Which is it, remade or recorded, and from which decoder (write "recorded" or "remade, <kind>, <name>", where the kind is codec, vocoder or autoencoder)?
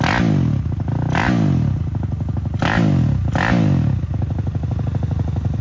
recorded